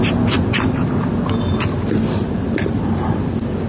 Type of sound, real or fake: real